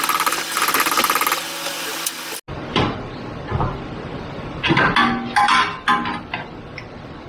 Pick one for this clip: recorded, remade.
recorded